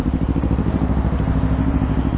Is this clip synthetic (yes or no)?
no